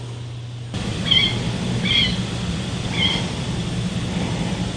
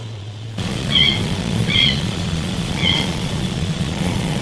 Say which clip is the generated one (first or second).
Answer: second